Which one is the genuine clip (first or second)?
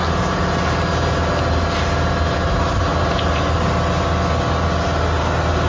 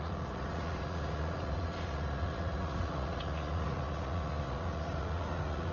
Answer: first